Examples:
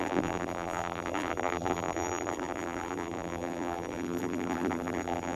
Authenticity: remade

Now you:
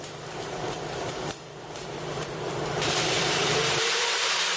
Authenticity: remade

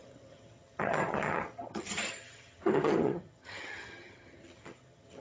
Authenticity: remade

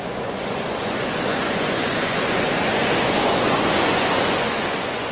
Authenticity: remade